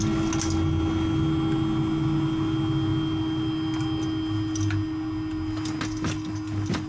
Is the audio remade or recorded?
recorded